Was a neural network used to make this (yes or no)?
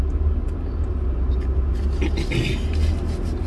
no